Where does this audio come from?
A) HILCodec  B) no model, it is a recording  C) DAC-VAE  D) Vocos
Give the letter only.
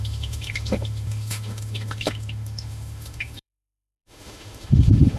C